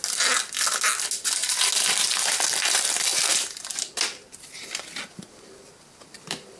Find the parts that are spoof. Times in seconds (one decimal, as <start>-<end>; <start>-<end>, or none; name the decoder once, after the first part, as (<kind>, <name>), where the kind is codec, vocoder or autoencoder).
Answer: 3.1-6.6 (vocoder, BigVGAN v2)